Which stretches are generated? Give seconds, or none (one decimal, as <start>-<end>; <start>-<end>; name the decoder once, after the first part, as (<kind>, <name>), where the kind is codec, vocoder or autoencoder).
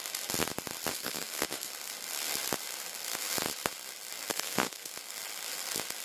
0.9-1.7 (codec, SNAC); 4.3-4.9